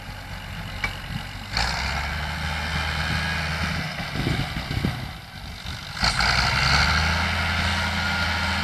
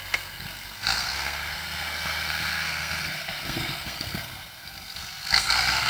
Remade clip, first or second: second